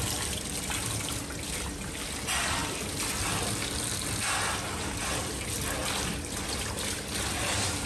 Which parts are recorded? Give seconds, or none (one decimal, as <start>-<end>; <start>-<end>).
0.0-7.9